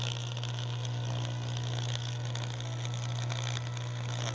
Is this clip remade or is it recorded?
recorded